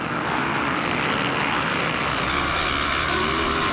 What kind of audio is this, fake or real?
real